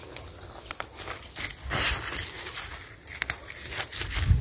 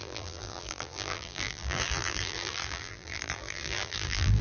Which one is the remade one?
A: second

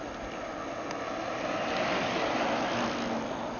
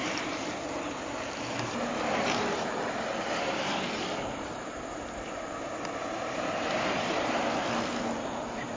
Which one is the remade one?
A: second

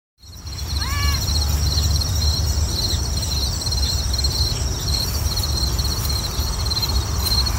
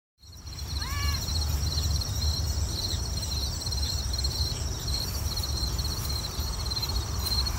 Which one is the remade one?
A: second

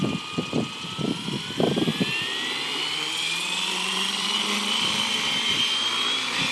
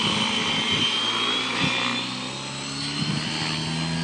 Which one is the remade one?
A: first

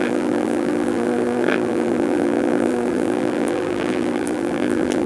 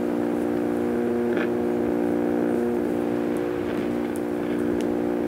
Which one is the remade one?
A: first